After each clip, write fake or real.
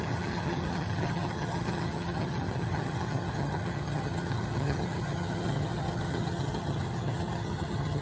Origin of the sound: fake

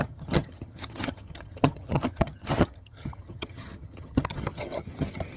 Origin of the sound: fake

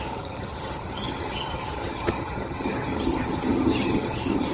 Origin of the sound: fake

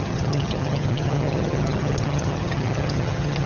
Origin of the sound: fake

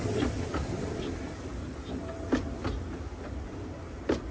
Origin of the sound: real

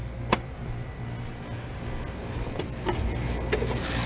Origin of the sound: real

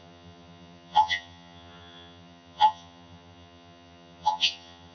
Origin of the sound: fake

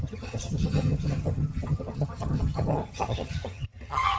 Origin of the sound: fake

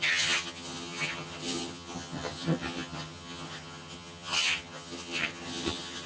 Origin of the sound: fake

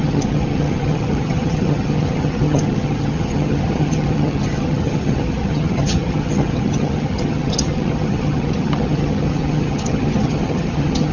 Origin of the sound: fake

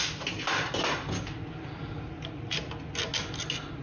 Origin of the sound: real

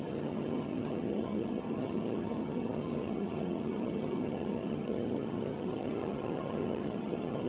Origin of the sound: fake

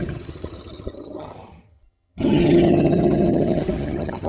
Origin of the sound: fake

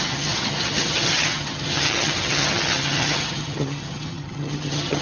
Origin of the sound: fake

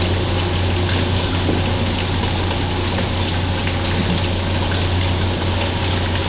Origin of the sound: real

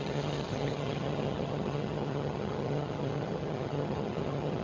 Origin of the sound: fake